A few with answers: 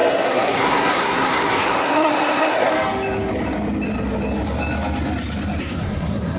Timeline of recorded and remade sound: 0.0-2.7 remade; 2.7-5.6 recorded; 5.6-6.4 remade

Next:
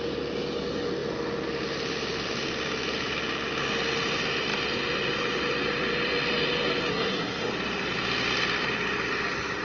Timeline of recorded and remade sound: 0.0-6.9 recorded; 6.9-7.5 remade; 7.5-9.6 recorded

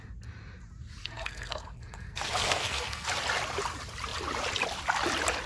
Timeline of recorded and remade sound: 0.0-1.0 recorded; 1.0-3.1 remade; 3.1-5.5 recorded

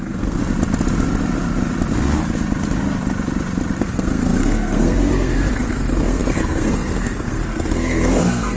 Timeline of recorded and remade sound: 0.0-0.4 remade; 0.4-3.8 recorded; 3.8-8.6 remade

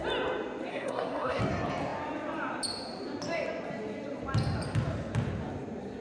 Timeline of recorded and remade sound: 0.0-0.7 recorded; 0.7-1.4 remade; 1.4-6.0 recorded